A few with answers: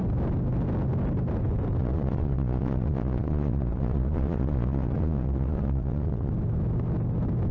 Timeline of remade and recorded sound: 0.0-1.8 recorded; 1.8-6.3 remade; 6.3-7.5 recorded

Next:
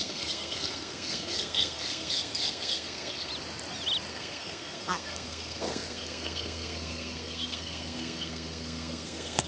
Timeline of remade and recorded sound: 0.0-3.3 remade; 3.3-4.1 recorded; 4.1-9.5 remade